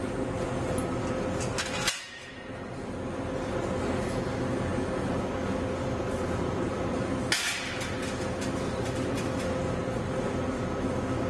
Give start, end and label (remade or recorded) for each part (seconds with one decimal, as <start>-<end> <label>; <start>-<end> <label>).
0.0-11.3 recorded